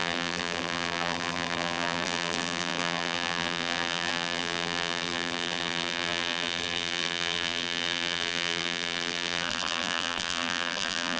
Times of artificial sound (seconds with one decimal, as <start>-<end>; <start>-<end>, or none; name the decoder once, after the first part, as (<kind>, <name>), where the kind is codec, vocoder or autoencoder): 0.0-11.2 (vocoder, BigVGAN v2)